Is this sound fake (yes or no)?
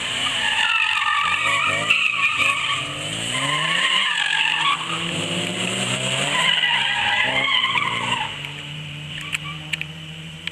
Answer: yes